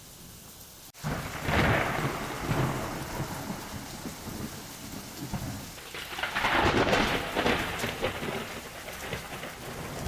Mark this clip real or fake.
real